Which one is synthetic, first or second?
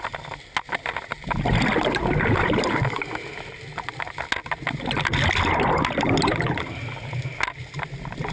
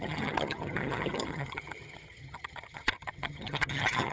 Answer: second